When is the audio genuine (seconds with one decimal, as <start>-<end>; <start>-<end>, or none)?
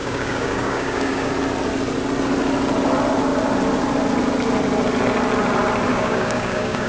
1.3-5.9